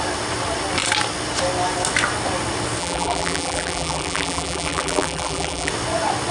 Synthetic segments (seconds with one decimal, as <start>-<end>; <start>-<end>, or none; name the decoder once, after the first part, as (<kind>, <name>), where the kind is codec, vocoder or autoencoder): 2.8-5.7 (vocoder, BigVGAN v2)